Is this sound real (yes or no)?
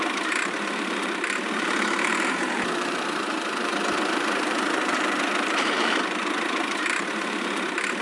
no